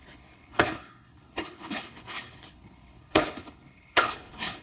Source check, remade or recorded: remade